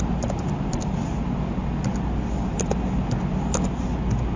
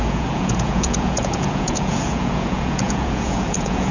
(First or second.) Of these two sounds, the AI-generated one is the second